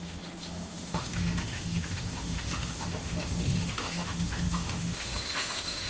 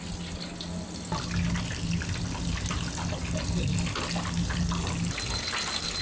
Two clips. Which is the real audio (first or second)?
second